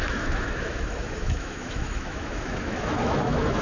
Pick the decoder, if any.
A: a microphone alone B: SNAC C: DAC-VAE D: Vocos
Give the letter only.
C